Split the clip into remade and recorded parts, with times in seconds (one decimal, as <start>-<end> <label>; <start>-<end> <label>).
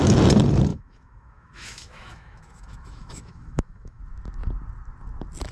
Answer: 0.0-0.7 recorded; 0.7-4.0 remade; 4.0-5.5 recorded